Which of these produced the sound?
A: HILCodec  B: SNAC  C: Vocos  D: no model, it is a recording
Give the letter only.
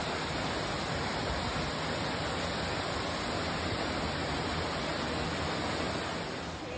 D